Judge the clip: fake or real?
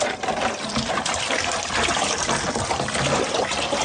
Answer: real